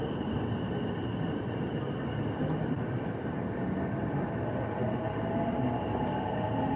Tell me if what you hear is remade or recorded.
recorded